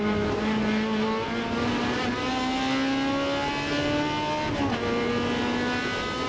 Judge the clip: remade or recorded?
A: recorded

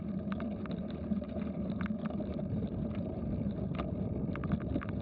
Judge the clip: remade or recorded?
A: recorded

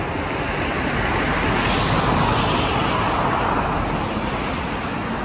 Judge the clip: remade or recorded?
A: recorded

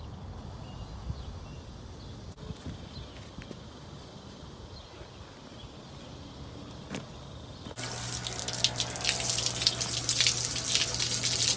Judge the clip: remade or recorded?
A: recorded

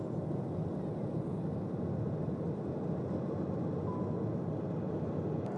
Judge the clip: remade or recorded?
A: recorded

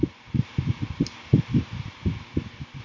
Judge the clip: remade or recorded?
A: recorded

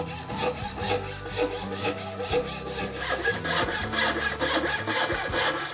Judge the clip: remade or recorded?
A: recorded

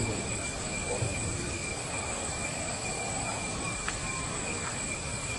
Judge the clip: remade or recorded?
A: remade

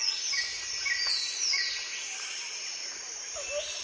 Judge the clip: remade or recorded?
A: recorded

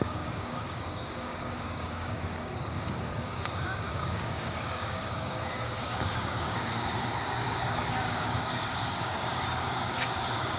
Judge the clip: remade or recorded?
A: remade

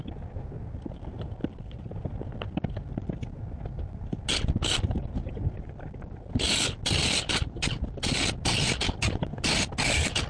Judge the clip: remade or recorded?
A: recorded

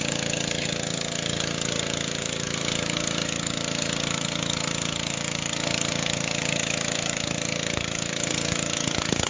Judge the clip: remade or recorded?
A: remade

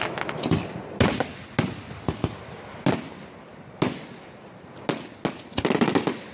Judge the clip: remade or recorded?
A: recorded